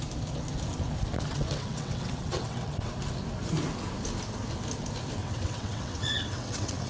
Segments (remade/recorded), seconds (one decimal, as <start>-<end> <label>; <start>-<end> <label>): 0.0-1.3 recorded; 1.3-2.9 remade; 2.9-5.2 recorded; 5.2-6.9 remade